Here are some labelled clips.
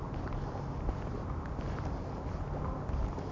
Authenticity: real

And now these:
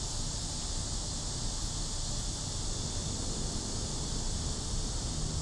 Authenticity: real